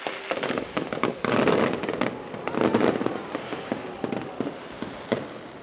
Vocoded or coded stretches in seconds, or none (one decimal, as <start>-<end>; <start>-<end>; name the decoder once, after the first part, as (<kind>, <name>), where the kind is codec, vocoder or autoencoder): none